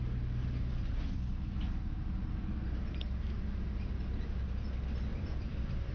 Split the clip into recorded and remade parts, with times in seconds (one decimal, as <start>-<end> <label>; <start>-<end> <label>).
0.0-5.1 recorded; 5.1-5.9 remade